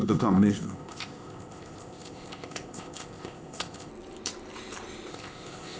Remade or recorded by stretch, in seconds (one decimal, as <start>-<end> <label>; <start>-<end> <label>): 0.0-3.9 remade; 3.9-5.1 recorded; 5.1-5.8 remade